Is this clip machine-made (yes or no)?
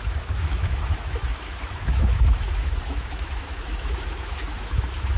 yes